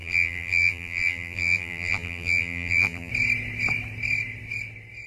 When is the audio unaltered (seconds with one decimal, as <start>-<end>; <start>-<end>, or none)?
3.1-5.1

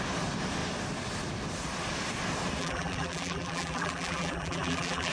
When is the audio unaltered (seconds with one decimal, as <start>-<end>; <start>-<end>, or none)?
0.0-2.6

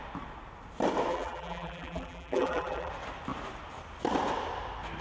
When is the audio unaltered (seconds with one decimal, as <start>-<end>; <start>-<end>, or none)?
0.0-1.1; 2.9-5.0

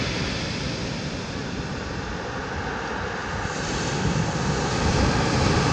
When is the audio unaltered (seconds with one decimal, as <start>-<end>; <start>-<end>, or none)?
0.0-5.7

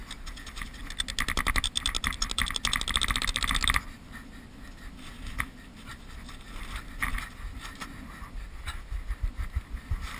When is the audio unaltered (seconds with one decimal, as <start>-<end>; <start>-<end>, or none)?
0.8-5.9; 7.6-9.3

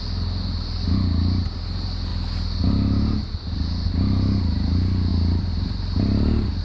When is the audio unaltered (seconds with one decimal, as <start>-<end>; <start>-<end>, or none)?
0.0-5.1

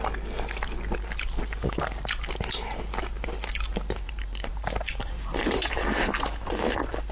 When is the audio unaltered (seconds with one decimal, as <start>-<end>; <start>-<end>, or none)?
0.0-3.7; 5.7-7.1

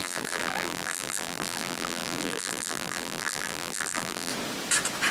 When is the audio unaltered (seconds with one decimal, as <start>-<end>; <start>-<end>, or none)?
4.3-5.1